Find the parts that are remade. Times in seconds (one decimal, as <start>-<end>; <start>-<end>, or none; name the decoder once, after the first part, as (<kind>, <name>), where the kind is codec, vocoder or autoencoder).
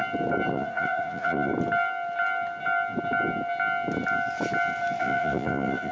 0.5-1.5 (vocoder, Vocos); 5.0-5.9